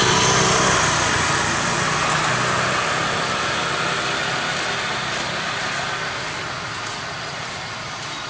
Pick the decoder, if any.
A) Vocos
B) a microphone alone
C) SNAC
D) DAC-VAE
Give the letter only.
B